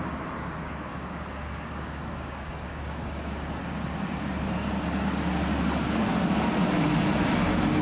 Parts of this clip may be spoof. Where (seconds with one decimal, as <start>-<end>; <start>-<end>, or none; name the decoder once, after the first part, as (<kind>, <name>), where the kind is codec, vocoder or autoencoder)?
0.0-3.6 (codec, DAC)

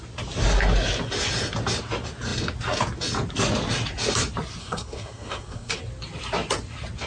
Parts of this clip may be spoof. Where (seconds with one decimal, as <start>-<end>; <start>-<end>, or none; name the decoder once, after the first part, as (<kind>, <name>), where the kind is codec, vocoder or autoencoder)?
4.6-5.8 (codec, SNAC)

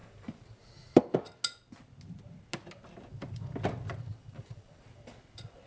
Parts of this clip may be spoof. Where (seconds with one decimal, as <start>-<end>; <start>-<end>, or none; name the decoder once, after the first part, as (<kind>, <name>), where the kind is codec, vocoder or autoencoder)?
0.0-1.0 (vocoder, BigVGAN v2); 3.1-3.6; 4.1-5.1

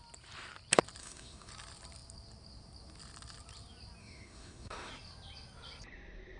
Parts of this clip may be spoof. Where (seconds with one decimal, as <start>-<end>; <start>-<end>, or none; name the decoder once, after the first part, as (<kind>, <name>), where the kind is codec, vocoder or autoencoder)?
1.0-1.5 (autoencoder, DAC-VAE); 4.0-4.9

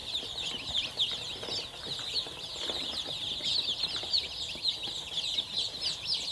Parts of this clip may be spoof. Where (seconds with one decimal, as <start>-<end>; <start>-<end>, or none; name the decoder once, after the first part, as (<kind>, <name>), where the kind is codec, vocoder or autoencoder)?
none

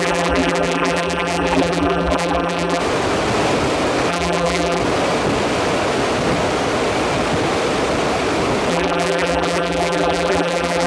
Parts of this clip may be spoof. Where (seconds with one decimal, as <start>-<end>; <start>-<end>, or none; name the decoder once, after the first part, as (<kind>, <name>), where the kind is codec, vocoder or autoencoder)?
0.0-2.8 (vocoder, BigVGAN v2); 4.1-4.8; 8.7-10.9